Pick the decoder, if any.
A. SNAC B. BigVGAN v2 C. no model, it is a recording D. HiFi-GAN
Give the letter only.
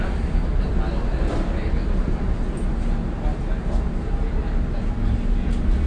C